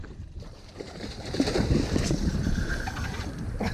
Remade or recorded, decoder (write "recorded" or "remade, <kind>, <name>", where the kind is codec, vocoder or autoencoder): remade, vocoder, BigVGAN v2